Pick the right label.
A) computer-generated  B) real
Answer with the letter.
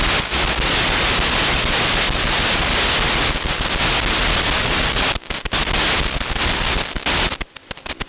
B